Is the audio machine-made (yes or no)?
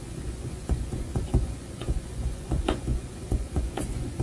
yes